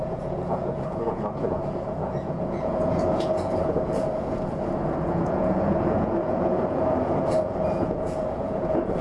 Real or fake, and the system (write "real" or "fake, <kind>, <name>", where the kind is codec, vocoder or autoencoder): fake, vocoder, Vocos